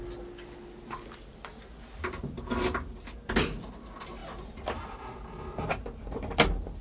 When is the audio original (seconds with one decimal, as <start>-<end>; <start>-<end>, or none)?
0.0-4.2; 5.7-6.8